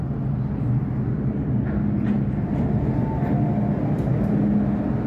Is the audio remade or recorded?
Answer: recorded